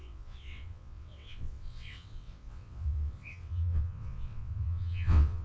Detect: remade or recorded remade